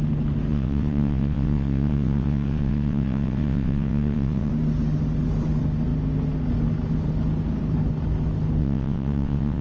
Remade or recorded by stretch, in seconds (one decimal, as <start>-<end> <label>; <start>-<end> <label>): 0.0-0.5 recorded; 0.5-4.5 remade; 4.5-8.6 recorded; 8.6-9.6 remade